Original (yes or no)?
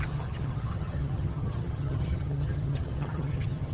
no